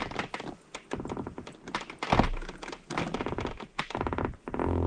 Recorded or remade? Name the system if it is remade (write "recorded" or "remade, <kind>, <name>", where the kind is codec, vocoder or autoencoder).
recorded